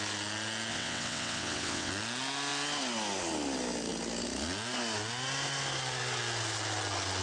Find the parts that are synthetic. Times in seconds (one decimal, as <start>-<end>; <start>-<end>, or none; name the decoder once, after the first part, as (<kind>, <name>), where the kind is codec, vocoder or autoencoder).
0.7-1.9 (vocoder, WaveNeXt)